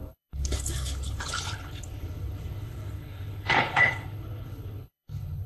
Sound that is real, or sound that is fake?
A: fake